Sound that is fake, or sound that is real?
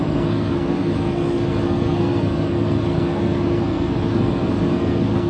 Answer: fake